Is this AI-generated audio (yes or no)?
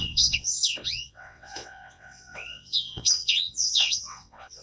yes